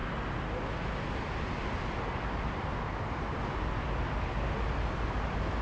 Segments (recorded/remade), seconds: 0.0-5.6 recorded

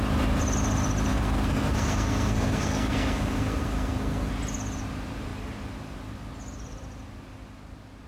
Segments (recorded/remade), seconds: 0.0-1.1 recorded; 1.1-4.3 remade; 4.3-8.1 recorded

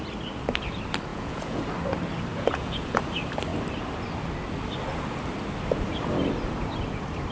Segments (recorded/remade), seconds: 0.0-1.1 recorded; 1.1-1.6 remade; 1.6-2.3 recorded; 2.3-3.0 remade; 3.0-7.3 recorded